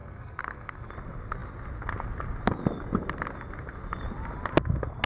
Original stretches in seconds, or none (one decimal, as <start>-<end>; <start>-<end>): 0.9-5.1